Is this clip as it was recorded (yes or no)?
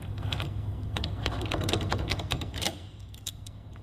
no